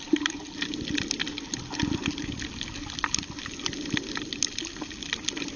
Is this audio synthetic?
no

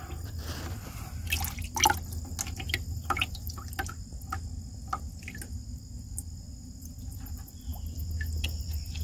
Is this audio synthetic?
no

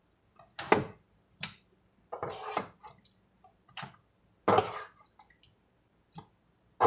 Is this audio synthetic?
no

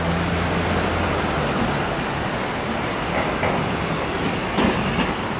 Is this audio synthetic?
no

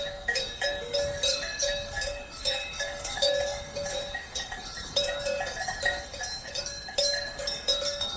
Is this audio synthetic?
yes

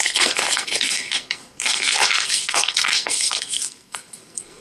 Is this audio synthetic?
yes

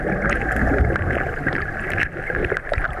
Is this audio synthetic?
no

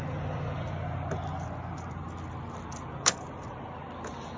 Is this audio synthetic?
no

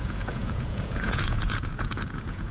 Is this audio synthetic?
yes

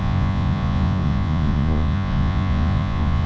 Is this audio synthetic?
yes